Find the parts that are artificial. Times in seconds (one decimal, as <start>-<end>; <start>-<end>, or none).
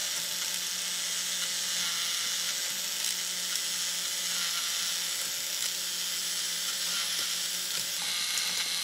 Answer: 6.2-8.0